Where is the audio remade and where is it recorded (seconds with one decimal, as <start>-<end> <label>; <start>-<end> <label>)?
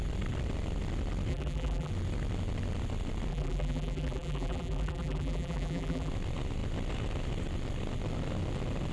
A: 0.0-1.3 recorded; 1.3-1.9 remade; 1.9-3.3 recorded; 3.3-6.1 remade; 6.1-8.9 recorded